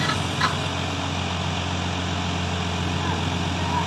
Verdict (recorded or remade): recorded